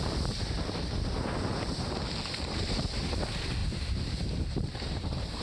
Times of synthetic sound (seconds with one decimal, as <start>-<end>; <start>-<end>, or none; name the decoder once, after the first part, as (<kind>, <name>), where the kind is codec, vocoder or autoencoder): 3.6-5.4 (vocoder, BigVGAN v2)